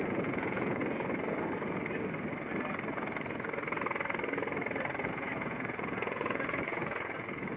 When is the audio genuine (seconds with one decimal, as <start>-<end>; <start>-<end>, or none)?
0.8-5.1